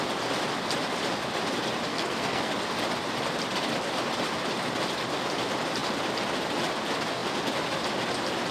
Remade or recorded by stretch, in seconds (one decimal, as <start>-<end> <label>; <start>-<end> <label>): 0.0-1.9 recorded; 1.9-2.5 remade; 2.5-8.5 recorded

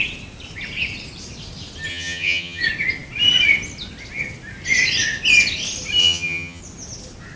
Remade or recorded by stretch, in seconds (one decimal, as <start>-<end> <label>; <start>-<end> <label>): 0.0-1.9 recorded; 1.9-2.6 remade; 2.6-6.0 recorded; 6.0-6.6 remade; 6.6-7.4 recorded

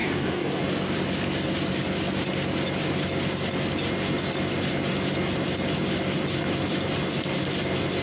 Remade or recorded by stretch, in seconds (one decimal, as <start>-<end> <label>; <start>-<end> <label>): 0.0-0.6 remade; 0.6-8.0 recorded

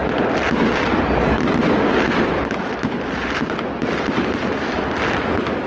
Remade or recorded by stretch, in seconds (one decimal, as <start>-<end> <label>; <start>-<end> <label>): 0.0-5.7 recorded

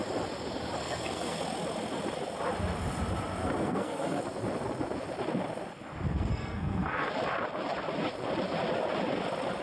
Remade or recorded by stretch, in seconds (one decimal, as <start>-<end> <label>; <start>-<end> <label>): 0.0-0.8 recorded; 0.8-1.4 remade; 1.4-3.4 recorded; 3.4-4.2 remade; 4.2-6.1 recorded; 6.1-7.1 remade; 7.1-9.6 recorded

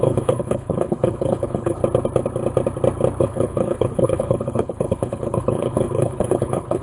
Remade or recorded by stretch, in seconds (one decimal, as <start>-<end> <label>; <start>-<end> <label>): 0.0-1.8 remade; 1.8-3.2 recorded; 3.2-6.8 remade